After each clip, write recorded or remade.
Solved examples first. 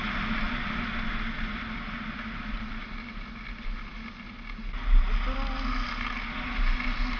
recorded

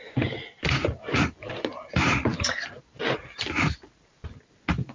recorded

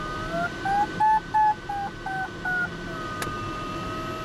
recorded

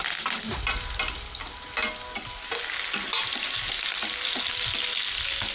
recorded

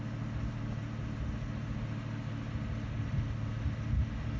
recorded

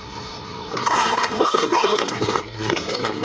remade